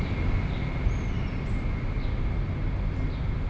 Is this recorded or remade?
recorded